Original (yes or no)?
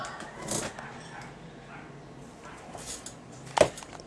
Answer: yes